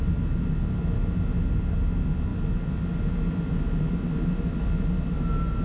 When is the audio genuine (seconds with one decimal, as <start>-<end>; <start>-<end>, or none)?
0.0-5.6